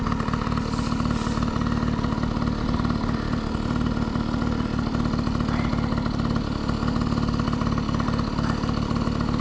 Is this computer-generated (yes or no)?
no